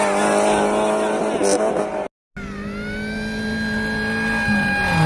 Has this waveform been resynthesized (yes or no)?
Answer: no